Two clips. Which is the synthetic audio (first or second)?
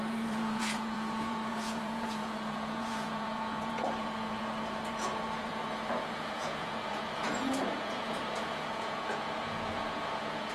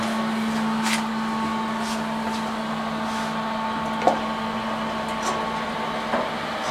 first